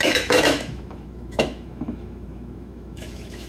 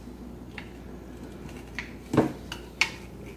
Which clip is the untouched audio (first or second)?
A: second